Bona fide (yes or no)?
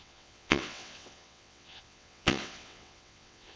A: no